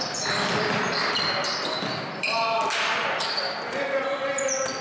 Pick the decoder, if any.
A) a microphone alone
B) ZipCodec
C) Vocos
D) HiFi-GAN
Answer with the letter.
A